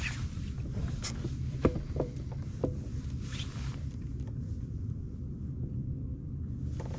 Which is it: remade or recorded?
remade